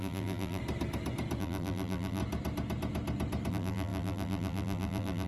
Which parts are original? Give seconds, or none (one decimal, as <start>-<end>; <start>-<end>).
0.6-1.4; 2.2-3.5